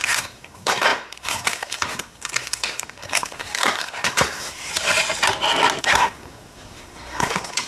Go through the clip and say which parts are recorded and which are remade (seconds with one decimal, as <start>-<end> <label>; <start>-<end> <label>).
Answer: 0.0-4.7 remade; 4.7-5.8 recorded; 5.8-7.7 remade